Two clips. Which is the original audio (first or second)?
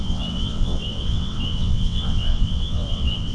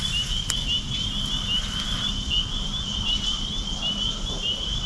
second